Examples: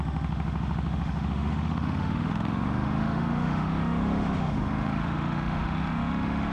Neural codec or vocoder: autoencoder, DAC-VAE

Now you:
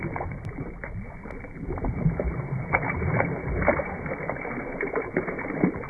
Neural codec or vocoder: none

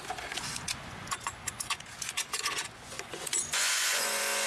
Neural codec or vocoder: vocoder, Vocos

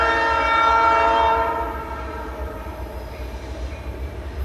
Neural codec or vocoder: vocoder, BigVGAN v2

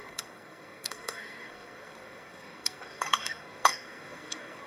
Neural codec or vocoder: codec, SNAC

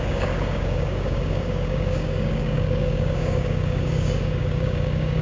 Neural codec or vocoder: codec, DAC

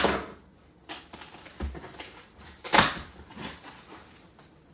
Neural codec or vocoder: none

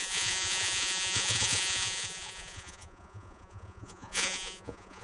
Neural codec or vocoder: vocoder, Vocos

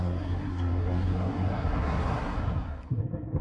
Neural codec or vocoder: codec, SNAC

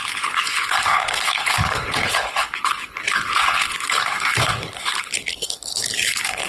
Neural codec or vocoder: codec, HILCodec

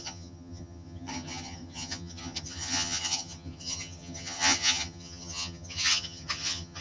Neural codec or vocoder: vocoder, HiFi-GAN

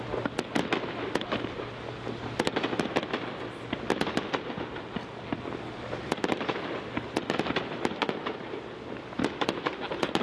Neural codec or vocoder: none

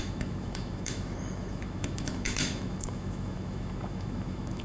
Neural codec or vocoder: autoencoder, DAC-VAE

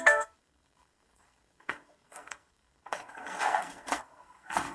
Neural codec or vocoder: codec, SNAC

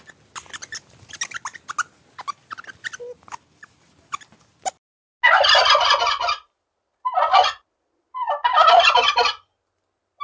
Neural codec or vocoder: none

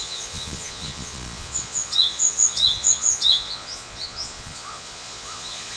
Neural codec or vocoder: vocoder, Vocos